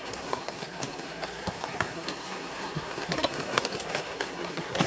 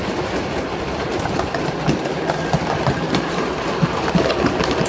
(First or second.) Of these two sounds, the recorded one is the second